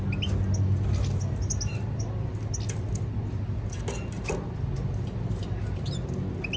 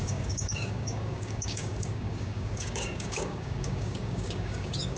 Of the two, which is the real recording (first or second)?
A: first